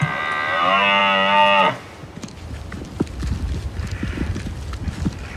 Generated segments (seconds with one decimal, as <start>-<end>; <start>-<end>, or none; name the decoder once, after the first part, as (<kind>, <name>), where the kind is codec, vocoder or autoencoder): none